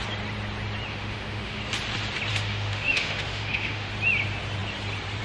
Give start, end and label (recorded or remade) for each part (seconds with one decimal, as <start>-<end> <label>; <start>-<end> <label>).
0.0-0.9 recorded; 0.9-1.6 remade; 1.6-2.3 recorded; 2.3-3.9 remade; 3.9-5.2 recorded